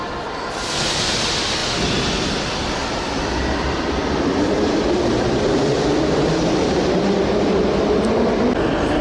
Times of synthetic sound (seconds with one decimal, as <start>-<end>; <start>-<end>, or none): 2.8-8.0